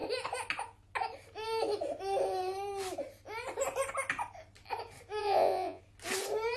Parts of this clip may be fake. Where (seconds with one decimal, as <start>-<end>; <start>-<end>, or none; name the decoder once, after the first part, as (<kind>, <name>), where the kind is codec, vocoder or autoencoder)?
5.2-5.8 (vocoder, Vocos)